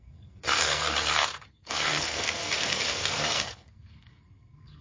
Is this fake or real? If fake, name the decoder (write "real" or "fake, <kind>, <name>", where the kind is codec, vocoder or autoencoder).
fake, codec, SNAC